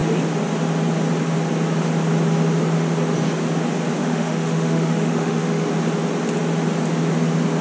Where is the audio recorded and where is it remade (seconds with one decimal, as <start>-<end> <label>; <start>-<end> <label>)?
0.0-4.0 recorded; 4.0-5.7 remade; 5.7-7.6 recorded

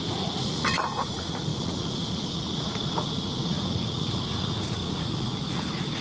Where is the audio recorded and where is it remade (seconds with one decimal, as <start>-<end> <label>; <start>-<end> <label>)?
0.0-6.0 remade

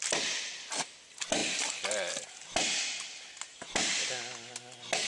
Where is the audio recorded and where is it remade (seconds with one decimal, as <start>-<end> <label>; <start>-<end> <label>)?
0.0-5.1 recorded

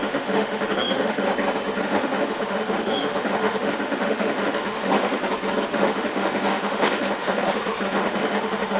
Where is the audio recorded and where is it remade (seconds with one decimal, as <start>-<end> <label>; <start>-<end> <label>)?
0.0-1.3 remade; 1.3-1.8 recorded; 1.8-5.2 remade; 5.2-5.7 recorded; 5.7-8.8 remade

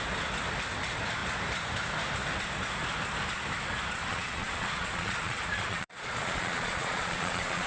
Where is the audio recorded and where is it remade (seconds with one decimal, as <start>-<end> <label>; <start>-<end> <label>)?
0.0-4.1 recorded; 4.1-7.7 remade

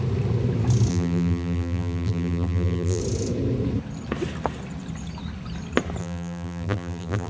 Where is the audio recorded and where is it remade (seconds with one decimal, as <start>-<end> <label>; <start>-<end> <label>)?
0.0-0.9 recorded; 0.9-3.0 remade; 3.0-6.0 recorded; 6.0-7.3 remade

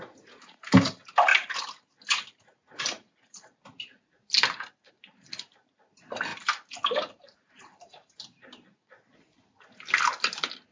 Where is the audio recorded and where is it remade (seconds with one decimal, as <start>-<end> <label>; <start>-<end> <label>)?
0.0-6.3 recorded; 6.3-7.6 remade; 7.6-10.7 recorded

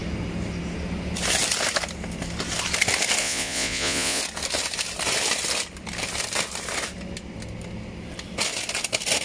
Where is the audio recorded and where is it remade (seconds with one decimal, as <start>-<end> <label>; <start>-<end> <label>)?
0.0-3.2 recorded; 3.2-4.2 remade; 4.2-9.2 recorded